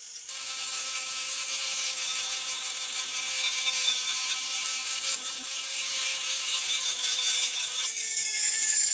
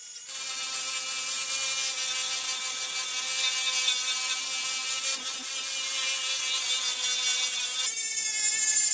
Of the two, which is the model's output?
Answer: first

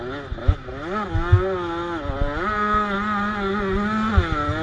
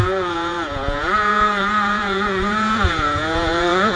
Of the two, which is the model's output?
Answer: second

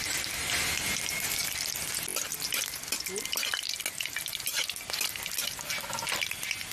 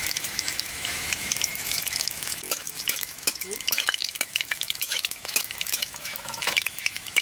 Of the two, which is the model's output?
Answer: second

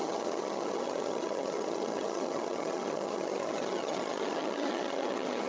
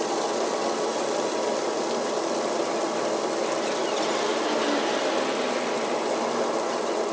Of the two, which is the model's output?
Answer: first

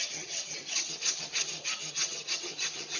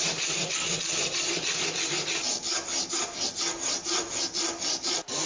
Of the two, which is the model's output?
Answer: first